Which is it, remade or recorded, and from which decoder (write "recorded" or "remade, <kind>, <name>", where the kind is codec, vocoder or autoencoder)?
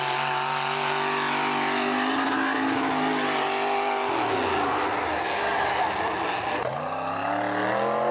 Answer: recorded